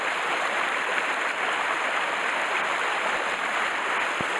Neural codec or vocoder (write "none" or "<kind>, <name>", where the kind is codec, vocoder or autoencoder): none